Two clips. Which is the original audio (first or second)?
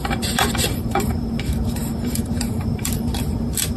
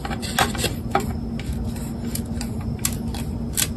second